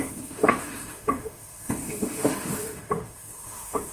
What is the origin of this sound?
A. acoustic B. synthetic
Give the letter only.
B